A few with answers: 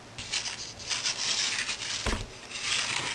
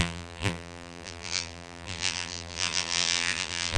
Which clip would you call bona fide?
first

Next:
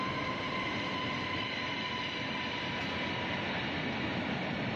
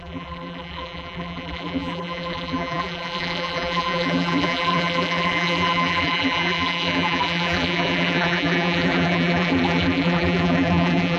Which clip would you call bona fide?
first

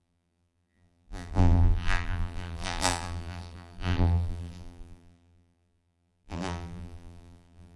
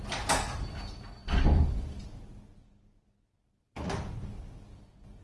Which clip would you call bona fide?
second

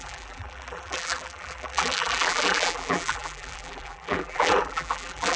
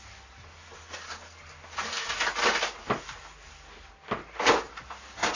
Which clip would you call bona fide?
second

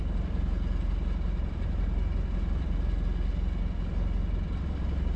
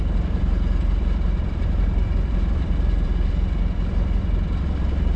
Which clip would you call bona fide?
first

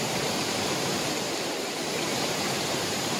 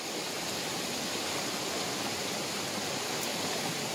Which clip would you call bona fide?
second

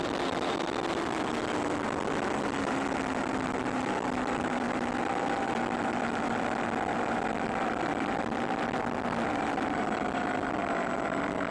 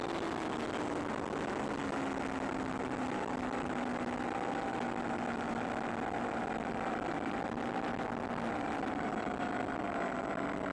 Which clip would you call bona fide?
second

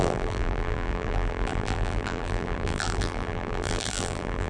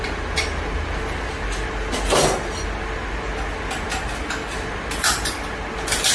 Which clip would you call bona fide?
second